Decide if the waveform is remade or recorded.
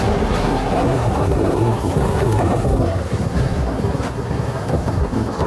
remade